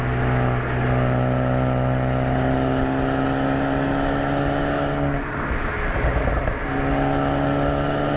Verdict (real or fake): real